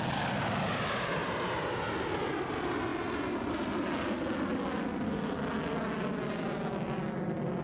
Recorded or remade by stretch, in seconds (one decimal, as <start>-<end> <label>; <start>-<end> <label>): 0.0-1.2 recorded; 1.2-1.8 remade; 1.8-7.6 recorded

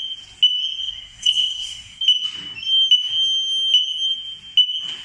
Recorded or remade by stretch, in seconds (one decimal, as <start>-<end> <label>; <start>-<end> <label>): 0.0-0.8 recorded; 0.8-2.0 remade; 2.0-5.0 recorded

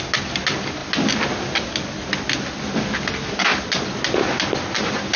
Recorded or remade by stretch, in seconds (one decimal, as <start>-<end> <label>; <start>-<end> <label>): 0.0-5.2 recorded

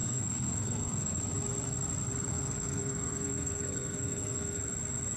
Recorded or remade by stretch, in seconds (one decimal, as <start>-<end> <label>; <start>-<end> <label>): 0.0-1.2 remade; 1.2-2.3 recorded; 2.3-4.6 remade; 4.6-5.2 recorded